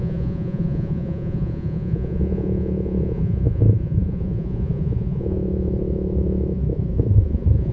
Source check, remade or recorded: remade